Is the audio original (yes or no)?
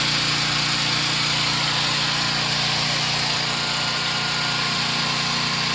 yes